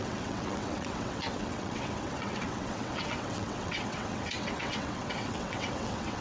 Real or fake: fake